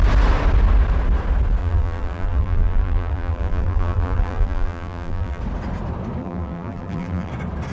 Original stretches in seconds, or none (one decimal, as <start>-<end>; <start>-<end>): 0.0-1.6; 5.4-6.2; 7.3-7.7